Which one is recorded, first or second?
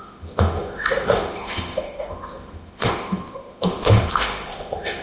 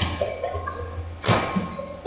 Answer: second